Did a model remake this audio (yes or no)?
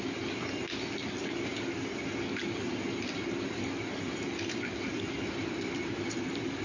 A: no